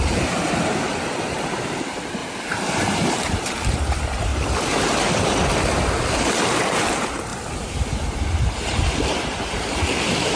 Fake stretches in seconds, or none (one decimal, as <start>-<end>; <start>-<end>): 0.0-2.2; 2.7-4.3; 6.1-7.3; 8.8-10.4